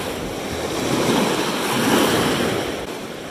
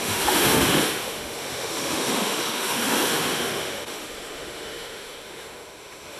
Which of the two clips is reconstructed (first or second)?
second